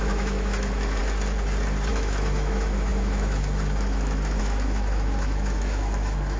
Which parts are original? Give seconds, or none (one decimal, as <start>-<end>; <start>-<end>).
1.0-1.9